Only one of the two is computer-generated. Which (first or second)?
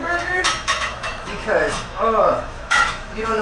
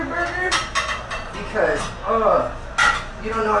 first